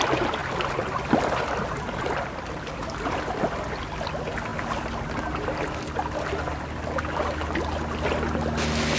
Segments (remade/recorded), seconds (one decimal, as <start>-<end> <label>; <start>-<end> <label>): 0.0-9.0 recorded